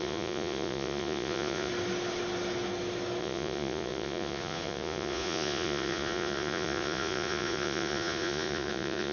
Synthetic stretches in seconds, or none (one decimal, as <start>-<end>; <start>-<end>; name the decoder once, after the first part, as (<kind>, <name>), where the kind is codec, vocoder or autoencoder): 0.0-1.7 (vocoder, Vocos); 3.2-9.1